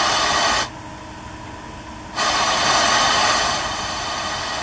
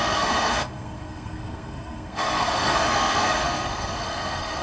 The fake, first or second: second